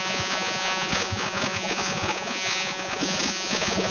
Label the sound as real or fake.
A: fake